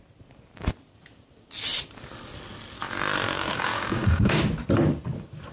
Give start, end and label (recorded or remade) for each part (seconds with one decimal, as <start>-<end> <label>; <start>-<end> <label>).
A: 0.0-3.5 recorded; 3.5-4.4 remade; 4.4-5.5 recorded